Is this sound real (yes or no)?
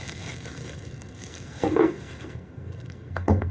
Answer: no